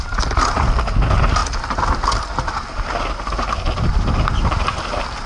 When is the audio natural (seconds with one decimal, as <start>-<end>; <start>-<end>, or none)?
0.0-5.3